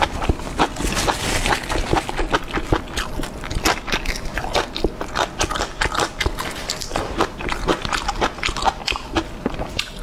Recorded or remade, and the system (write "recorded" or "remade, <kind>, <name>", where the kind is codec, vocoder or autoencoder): recorded